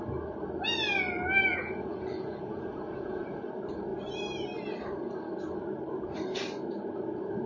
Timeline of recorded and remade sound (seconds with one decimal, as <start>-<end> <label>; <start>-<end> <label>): 0.0-1.5 recorded; 1.5-3.5 remade; 3.5-7.5 recorded